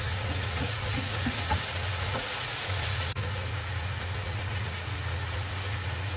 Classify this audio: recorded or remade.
remade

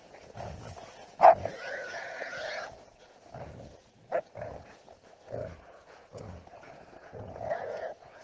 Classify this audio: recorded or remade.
remade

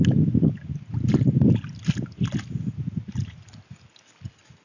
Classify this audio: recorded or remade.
recorded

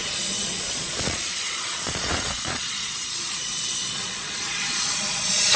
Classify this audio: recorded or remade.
remade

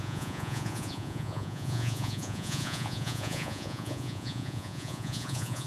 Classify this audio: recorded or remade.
remade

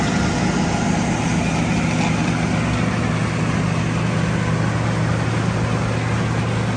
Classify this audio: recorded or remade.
recorded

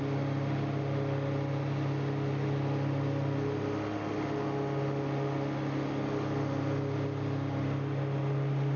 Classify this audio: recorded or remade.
recorded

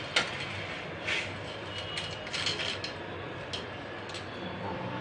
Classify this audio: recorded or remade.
recorded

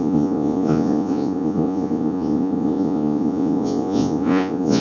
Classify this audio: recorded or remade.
remade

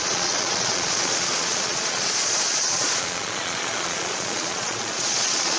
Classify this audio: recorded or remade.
remade